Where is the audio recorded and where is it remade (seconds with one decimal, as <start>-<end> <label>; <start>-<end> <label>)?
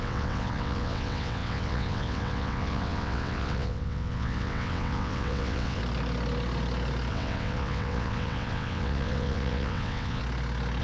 0.0-5.8 remade; 5.8-7.1 recorded; 7.1-10.2 remade; 10.2-10.8 recorded